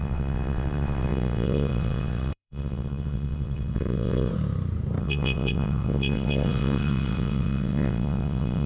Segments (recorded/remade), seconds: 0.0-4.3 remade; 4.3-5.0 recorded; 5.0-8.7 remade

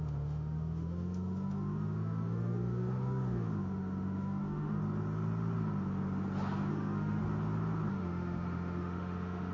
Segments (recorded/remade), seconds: 0.0-4.8 remade; 4.8-6.7 recorded; 6.7-7.2 remade; 7.2-7.9 recorded; 7.9-9.5 remade

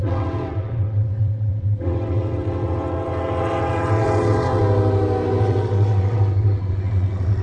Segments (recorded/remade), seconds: 0.0-4.6 remade; 4.6-5.4 recorded; 5.4-7.4 remade